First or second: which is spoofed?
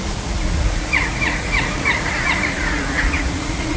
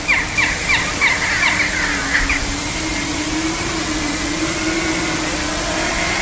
first